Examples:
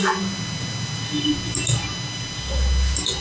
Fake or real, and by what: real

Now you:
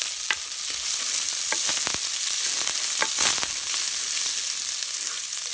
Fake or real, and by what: real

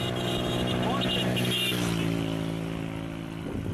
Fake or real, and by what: real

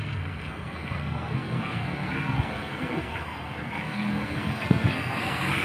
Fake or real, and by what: fake, codec, SNAC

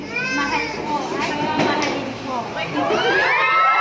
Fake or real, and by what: real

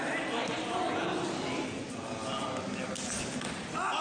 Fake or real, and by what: real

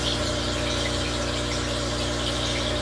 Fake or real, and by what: real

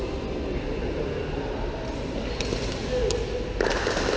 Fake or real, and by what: real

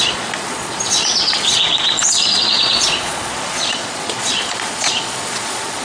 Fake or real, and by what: fake, vocoder, Vocos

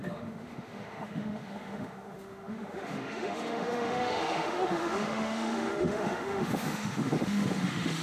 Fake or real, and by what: fake, autoencoder, DAC-VAE